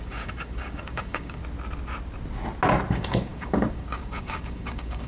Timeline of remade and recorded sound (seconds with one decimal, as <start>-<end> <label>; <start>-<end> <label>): 0.0-1.4 remade; 1.4-2.9 recorded; 2.9-5.1 remade